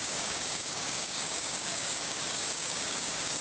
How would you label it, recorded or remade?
remade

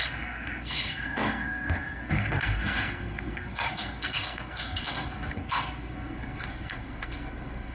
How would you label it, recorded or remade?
remade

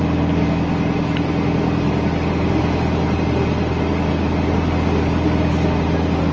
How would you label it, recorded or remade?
recorded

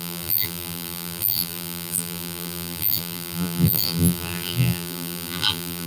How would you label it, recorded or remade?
remade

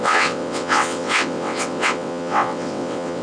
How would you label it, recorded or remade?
remade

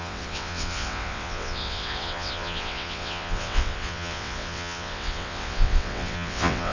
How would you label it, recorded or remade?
remade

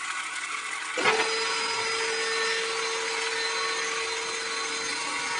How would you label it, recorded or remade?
recorded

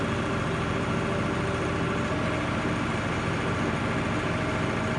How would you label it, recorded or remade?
recorded